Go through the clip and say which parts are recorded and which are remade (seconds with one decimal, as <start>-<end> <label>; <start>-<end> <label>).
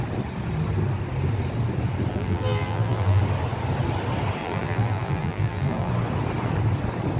0.0-2.1 recorded; 2.1-3.2 remade; 3.2-4.4 recorded; 4.4-5.9 remade; 5.9-7.2 recorded